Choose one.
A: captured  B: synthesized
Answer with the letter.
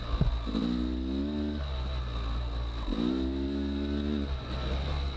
A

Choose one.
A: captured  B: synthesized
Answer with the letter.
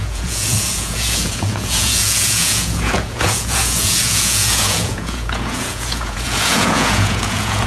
B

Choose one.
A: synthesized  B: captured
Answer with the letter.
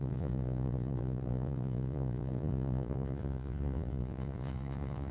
A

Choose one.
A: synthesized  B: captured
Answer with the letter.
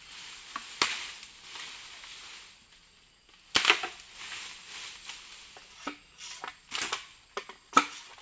B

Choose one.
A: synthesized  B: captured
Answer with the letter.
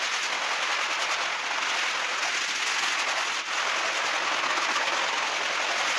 B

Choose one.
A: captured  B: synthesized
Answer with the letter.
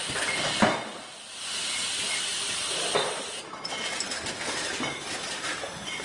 A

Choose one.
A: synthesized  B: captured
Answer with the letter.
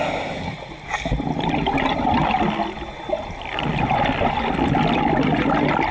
B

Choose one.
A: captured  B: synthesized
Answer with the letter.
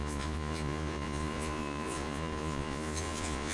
B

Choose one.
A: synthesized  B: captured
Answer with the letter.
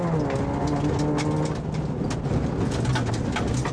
B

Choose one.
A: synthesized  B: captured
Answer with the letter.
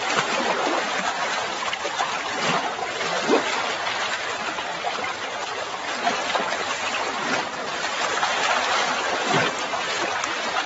B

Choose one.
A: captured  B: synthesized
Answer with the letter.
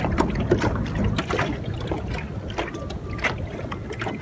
A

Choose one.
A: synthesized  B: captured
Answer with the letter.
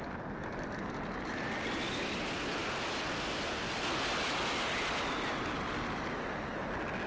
B